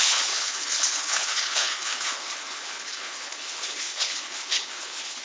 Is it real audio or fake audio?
fake